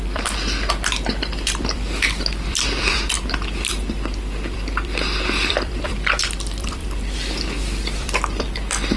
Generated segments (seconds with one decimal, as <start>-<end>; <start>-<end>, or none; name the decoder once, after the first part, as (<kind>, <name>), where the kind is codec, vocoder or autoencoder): 0.0-9.0 (vocoder, BigVGAN v2)